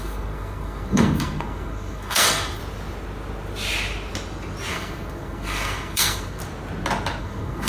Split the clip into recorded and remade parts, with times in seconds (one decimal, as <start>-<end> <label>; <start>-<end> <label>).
0.0-2.6 remade; 2.6-4.7 recorded; 4.7-6.4 remade; 6.4-7.2 recorded; 7.2-7.7 remade

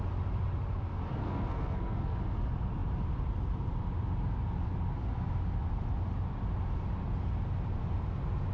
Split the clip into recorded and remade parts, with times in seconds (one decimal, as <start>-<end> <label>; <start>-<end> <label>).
0.0-1.2 recorded; 1.2-2.2 remade; 2.2-8.5 recorded

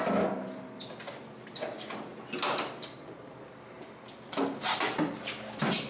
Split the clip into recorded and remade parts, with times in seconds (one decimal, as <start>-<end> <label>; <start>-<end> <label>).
0.0-5.9 recorded

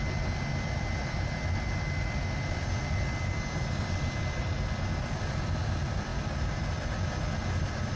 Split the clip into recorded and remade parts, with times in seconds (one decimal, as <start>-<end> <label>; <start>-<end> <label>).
0.0-8.0 recorded